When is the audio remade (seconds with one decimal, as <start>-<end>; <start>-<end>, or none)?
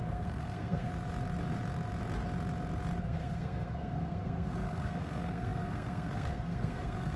0.0-0.9; 3.0-7.2